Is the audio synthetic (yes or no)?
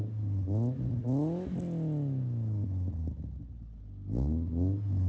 no